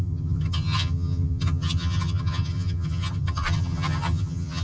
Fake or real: fake